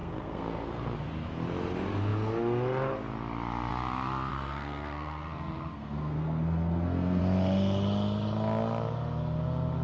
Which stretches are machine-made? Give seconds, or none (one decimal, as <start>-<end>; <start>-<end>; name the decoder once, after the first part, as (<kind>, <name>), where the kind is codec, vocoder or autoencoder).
0.0-0.9 (codec, SNAC); 4.3-7.2